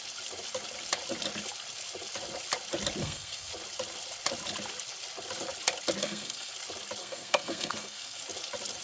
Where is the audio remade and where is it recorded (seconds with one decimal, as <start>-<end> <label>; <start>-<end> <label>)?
0.0-3.0 recorded; 3.0-3.5 remade; 3.5-6.0 recorded; 6.0-6.5 remade; 6.5-7.0 recorded; 7.0-8.2 remade; 8.2-8.8 recorded